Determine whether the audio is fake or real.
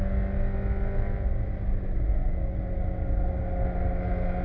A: real